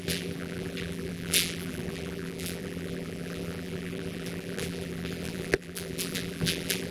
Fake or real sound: fake